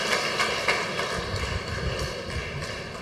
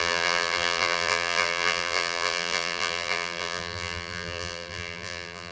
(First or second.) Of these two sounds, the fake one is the second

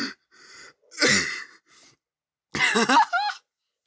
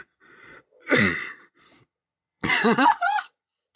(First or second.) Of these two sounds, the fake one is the second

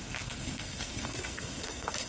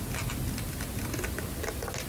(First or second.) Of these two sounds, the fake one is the first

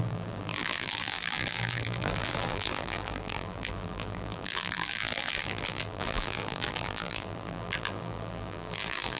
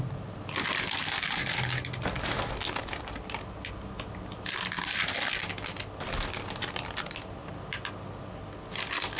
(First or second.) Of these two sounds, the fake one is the first